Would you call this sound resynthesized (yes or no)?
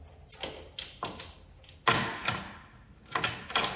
no